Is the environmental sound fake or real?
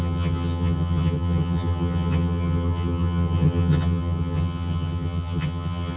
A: fake